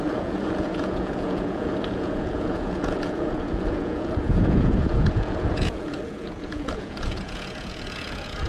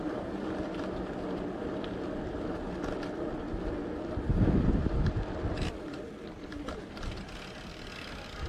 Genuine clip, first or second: second